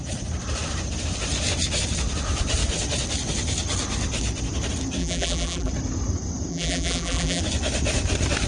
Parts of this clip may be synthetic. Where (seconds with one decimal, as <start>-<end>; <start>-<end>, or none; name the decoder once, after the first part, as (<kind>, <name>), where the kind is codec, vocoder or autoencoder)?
5.0-5.7 (vocoder, BigVGAN v2); 6.5-7.4